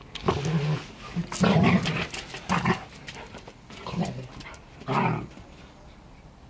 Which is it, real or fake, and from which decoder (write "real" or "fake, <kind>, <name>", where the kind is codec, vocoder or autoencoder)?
real